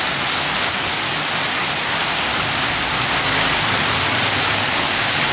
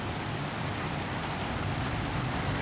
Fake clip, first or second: second